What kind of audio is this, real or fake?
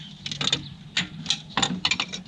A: real